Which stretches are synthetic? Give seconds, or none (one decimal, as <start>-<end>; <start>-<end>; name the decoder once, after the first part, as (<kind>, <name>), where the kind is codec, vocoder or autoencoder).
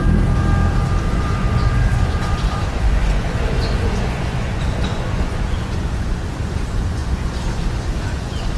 1.1-8.6 (vocoder, Vocos)